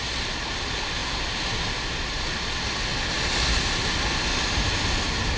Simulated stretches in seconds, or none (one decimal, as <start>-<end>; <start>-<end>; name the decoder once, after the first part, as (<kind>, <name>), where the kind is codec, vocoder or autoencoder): none

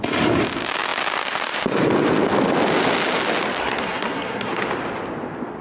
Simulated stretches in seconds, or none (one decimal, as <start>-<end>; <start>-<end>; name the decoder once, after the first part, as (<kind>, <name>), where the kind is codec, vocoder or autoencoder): 3.6-4.6 (codec, SNAC)

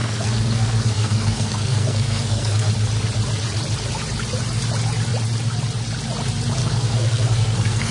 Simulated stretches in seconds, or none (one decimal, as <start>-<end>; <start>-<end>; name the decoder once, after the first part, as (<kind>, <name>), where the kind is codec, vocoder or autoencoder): 0.0-2.7 (codec, SNAC); 6.6-7.9

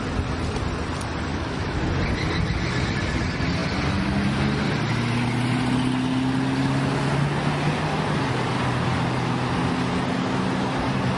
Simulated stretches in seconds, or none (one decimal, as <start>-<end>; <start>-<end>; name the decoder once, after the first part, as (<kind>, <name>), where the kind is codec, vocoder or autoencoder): 1.3-1.8 (autoencoder, DAC-VAE)